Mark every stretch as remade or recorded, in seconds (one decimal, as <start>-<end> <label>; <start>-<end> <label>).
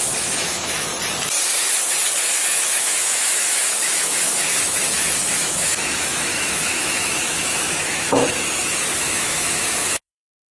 0.0-0.9 remade; 0.9-2.2 recorded; 2.2-8.2 remade; 8.2-9.0 recorded; 9.0-10.5 remade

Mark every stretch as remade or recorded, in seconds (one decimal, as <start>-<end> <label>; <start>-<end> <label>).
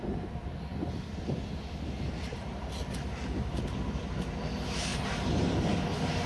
0.0-6.3 recorded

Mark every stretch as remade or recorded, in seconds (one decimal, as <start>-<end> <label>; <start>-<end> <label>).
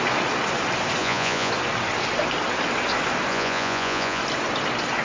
0.0-1.0 recorded; 1.0-1.5 remade; 1.5-3.3 recorded; 3.3-4.2 remade; 4.2-5.0 recorded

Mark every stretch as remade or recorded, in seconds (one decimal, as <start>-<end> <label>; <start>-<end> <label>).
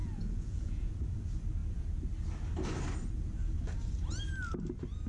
0.0-0.9 remade; 0.9-5.1 recorded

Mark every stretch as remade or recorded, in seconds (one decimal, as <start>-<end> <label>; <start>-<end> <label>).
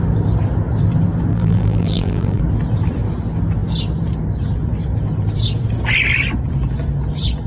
0.0-1.3 recorded; 1.3-2.4 remade; 2.4-7.5 recorded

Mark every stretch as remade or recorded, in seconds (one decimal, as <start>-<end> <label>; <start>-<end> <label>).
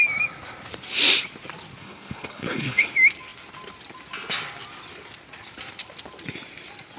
0.0-1.8 recorded; 1.8-2.9 remade; 2.9-7.0 recorded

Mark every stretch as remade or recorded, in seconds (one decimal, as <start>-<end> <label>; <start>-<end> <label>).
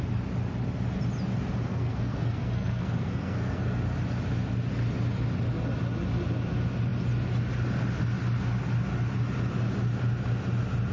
0.0-1.7 recorded; 1.7-3.8 remade; 3.8-10.9 recorded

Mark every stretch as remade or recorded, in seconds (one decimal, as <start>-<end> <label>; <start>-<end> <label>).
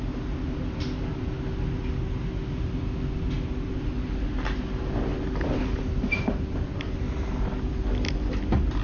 0.0-8.8 recorded